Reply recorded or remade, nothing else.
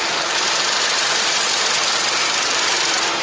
remade